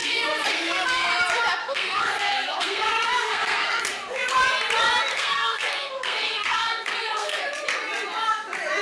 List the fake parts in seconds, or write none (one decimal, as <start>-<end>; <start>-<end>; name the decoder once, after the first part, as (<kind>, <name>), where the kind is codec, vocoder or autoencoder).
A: 0.0-1.1 (codec, SNAC); 1.6-3.8; 5.1-7.4